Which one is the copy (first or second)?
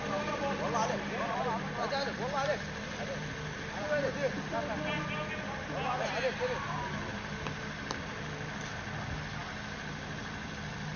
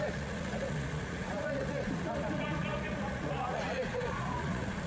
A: second